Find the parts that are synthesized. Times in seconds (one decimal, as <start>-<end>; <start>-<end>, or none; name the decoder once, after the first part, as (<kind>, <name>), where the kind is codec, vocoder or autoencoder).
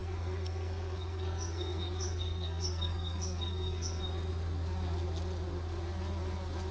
0.0-4.0 (codec, SNAC)